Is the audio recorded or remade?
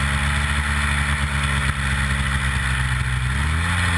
recorded